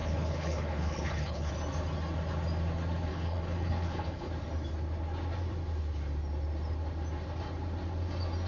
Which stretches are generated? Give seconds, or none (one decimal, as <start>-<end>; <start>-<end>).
0.0-1.5; 3.1-4.3